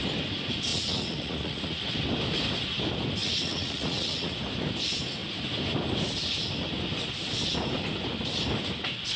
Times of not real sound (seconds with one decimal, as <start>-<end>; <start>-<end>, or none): 0.7-1.8; 3.2-4.3